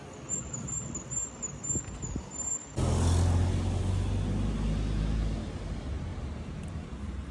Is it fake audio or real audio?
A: real